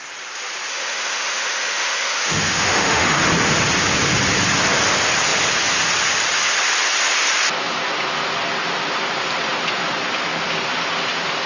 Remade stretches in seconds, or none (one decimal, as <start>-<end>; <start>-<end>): 0.7-3.2